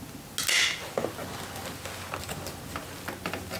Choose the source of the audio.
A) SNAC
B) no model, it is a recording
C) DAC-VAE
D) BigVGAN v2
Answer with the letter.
B